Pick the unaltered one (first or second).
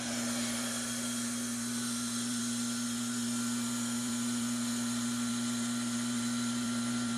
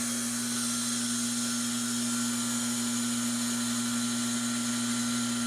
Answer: second